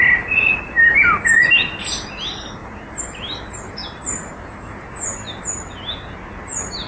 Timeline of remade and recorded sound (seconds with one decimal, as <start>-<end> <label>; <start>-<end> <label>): 0.0-2.6 recorded; 2.6-5.4 remade; 5.4-6.9 recorded